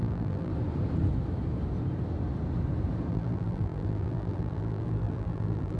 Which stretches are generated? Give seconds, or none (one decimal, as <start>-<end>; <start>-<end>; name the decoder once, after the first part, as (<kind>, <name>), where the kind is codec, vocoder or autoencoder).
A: 0.0-0.5 (vocoder, BigVGAN v2); 3.1-5.8